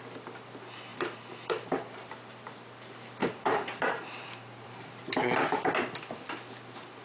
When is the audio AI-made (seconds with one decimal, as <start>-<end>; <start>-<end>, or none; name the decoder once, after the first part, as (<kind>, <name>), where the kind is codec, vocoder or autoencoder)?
0.9-2.1 (vocoder, BigVGAN v2); 3.2-5.2